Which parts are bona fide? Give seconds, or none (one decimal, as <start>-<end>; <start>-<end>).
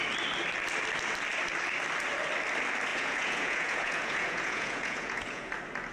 0.0-2.9; 5.5-5.9